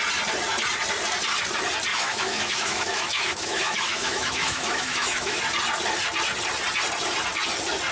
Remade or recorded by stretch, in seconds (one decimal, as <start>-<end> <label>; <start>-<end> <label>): 0.0-1.9 recorded; 1.9-5.4 remade; 5.4-7.9 recorded